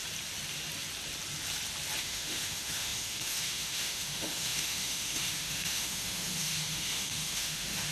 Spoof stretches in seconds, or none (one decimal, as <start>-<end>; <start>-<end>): 2.0-7.9